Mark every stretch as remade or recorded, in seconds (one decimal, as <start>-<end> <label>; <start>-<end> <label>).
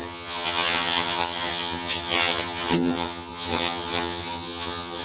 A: 0.0-5.0 remade